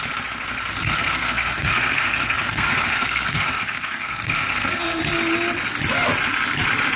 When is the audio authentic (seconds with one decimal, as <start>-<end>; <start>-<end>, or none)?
0.0-0.8; 5.0-7.0